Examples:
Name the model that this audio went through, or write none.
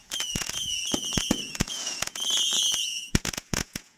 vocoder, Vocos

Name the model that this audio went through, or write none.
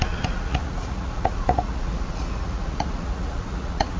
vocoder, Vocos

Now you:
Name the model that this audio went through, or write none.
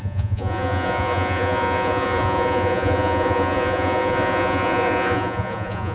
vocoder, Vocos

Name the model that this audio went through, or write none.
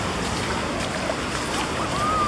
none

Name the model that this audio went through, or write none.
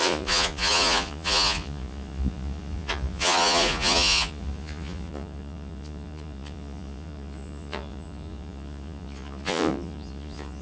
vocoder, Vocos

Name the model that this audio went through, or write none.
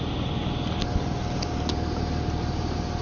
none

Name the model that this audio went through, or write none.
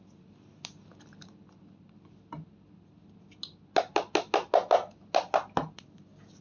none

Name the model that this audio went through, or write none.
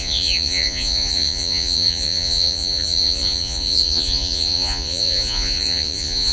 vocoder, Vocos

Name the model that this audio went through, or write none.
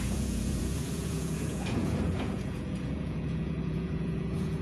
vocoder, Vocos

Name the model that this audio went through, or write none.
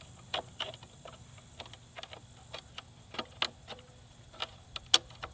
none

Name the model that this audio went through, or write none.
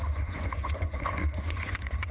vocoder, Vocos